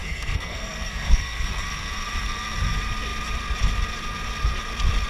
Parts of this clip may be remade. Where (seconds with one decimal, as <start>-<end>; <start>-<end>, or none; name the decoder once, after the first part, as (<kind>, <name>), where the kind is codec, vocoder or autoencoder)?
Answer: 0.0-1.5 (codec, SNAC)

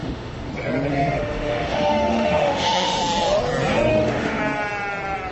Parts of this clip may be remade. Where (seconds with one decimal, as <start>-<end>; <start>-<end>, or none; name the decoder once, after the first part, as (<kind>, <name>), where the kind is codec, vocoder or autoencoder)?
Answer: 0.0-0.5 (autoencoder, DAC-VAE); 0.9-3.0; 3.9-4.4

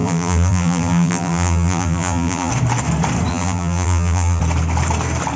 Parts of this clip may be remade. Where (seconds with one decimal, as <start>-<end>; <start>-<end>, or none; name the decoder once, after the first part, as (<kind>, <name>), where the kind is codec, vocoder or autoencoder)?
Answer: 0.0-2.5 (vocoder, BigVGAN v2); 3.3-4.4

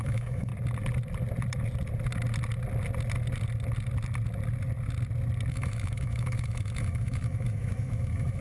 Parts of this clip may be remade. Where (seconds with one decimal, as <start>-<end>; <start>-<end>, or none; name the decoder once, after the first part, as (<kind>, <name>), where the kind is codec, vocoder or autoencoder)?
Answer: 0.0-0.5 (autoencoder, DAC-VAE); 5.5-8.4